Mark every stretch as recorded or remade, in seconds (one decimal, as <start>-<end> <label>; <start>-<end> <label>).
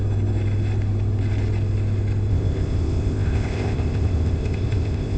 0.0-2.3 recorded; 2.3-5.2 remade